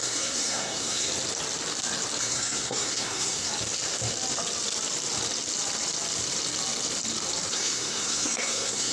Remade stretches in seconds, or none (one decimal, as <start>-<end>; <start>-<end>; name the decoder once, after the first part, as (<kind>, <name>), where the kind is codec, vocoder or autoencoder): 0.0-1.1 (codec, SNAC); 2.2-3.5; 7.5-8.9